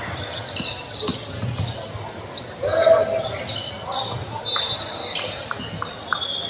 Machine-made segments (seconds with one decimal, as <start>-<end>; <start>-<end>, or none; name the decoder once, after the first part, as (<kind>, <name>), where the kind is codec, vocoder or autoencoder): none